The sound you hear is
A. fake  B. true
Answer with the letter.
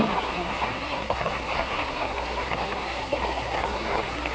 A